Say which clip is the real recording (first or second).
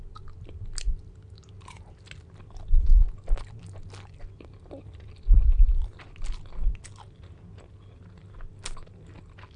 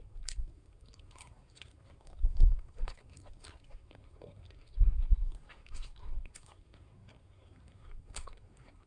first